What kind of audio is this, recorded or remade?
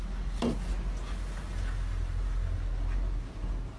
recorded